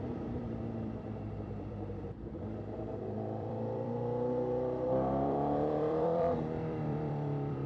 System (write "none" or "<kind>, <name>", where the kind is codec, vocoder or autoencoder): vocoder, BigVGAN v2